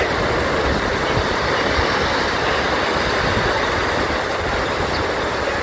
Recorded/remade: recorded